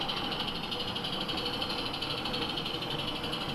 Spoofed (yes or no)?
no